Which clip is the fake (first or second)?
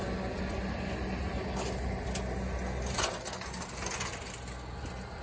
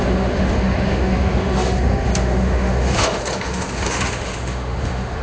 second